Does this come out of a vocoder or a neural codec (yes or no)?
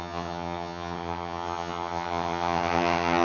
yes